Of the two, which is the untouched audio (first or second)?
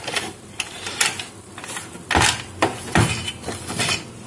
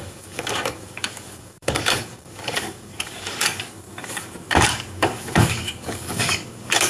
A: first